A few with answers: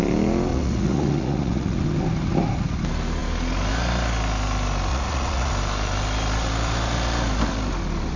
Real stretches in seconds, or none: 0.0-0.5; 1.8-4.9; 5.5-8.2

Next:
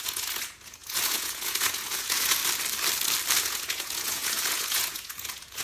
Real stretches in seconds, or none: 2.4-3.4

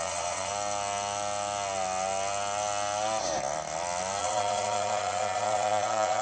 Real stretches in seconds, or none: 0.5-4.2

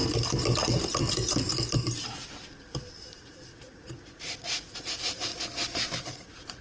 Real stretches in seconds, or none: 0.0-3.1; 5.3-6.0

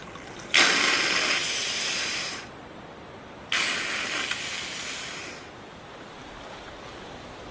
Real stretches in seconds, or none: 0.0-7.5

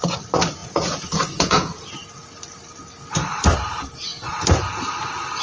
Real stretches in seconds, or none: 0.0-0.6; 1.9-5.4

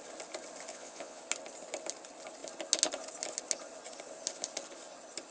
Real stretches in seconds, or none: 0.0-0.7; 1.2-5.3